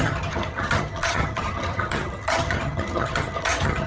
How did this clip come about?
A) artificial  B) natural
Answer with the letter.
A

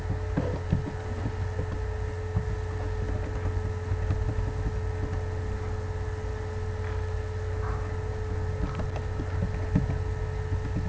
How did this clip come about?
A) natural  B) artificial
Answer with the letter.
A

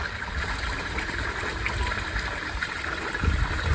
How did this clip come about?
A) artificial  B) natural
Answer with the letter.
B